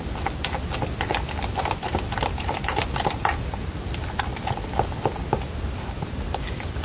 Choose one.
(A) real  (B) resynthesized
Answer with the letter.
A